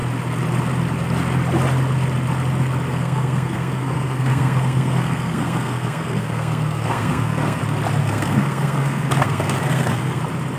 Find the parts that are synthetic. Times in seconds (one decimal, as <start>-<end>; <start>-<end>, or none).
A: 2.9-7.6; 8.0-10.2

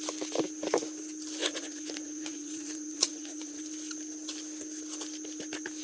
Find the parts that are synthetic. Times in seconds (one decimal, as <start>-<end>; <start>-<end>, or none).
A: 1.4-3.6